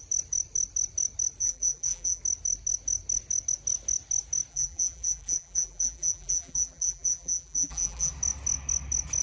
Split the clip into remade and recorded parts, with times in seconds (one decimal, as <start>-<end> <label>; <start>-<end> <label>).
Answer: 0.0-1.4 recorded; 1.4-2.2 remade; 2.2-4.5 recorded; 4.5-8.1 remade; 8.1-9.2 recorded

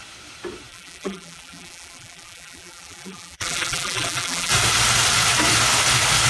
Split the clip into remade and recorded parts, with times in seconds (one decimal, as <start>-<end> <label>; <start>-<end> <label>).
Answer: 0.0-0.7 recorded; 0.7-4.5 remade; 4.5-6.3 recorded

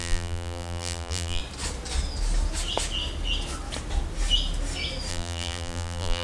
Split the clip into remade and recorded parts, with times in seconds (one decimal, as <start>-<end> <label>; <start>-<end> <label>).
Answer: 0.0-1.4 remade; 1.4-5.1 recorded; 5.1-6.2 remade

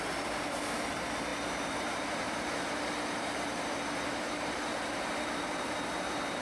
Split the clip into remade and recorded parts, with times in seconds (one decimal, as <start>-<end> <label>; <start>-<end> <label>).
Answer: 0.0-6.4 remade